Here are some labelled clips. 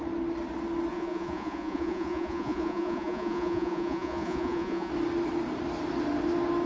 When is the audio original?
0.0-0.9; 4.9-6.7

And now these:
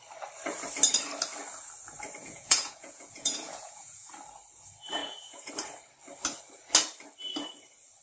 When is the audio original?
0.0-2.2; 4.1-5.0; 5.5-8.0